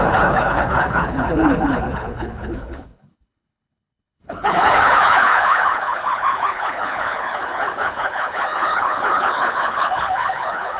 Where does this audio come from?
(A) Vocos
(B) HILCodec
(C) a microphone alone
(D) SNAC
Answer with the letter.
B